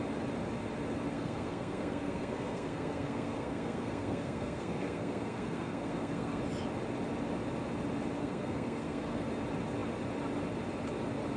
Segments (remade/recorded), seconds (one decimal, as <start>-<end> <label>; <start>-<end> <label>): 0.0-1.1 recorded; 1.1-6.4 remade; 6.4-8.2 recorded; 8.2-9.3 remade; 9.3-11.4 recorded